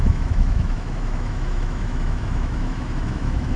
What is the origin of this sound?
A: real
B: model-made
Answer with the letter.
B